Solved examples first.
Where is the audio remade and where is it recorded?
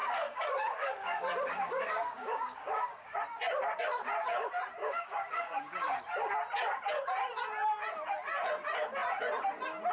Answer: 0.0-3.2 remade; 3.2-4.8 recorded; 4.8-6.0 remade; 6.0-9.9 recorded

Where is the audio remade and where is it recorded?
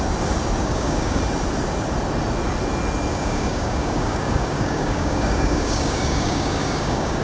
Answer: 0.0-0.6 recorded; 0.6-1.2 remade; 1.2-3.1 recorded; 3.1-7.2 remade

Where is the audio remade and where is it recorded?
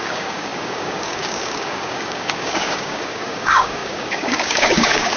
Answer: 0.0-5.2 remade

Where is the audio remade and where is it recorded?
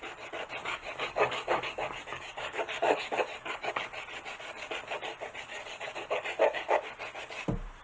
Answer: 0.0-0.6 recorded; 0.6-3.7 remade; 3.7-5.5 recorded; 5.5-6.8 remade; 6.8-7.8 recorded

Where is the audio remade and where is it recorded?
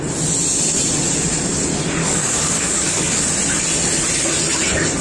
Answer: 0.0-2.0 recorded; 2.0-3.2 remade; 3.2-5.0 recorded